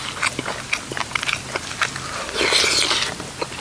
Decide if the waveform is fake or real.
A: real